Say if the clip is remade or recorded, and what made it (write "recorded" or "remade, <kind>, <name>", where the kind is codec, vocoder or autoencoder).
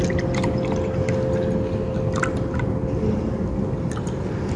recorded